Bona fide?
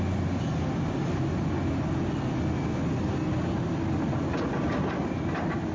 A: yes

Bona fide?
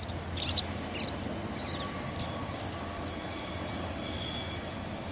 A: yes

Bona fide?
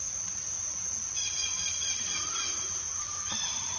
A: no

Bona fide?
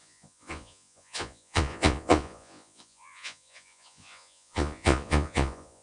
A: no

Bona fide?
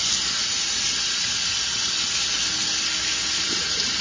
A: yes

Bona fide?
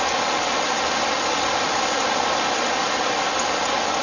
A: yes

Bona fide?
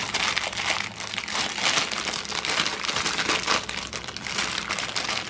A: yes